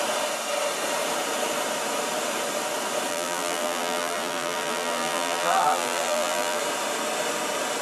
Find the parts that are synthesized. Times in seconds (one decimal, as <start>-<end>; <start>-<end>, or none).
3.1-6.6